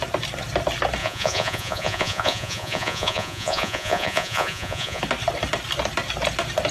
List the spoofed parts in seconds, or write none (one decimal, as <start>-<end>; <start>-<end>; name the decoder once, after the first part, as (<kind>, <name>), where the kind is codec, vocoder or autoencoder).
1.0-5.0 (vocoder, Vocos)